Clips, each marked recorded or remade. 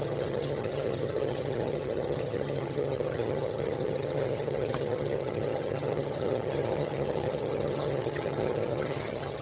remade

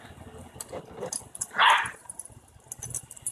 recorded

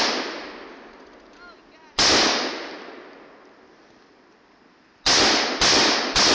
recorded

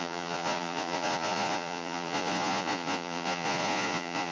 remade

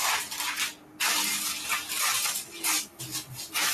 recorded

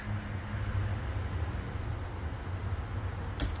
recorded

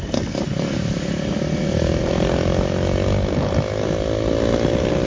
recorded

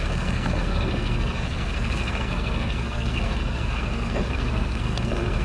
remade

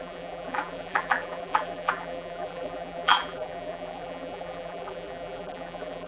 remade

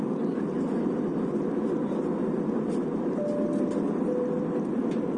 recorded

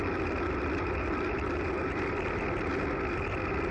recorded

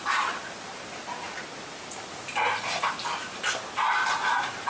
recorded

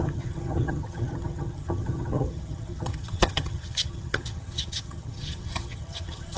remade